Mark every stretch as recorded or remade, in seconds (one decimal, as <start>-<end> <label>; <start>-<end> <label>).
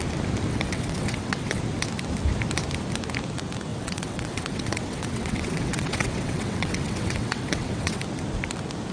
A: 0.0-0.5 recorded; 0.5-1.6 remade; 1.6-3.7 recorded; 3.7-8.0 remade; 8.0-8.9 recorded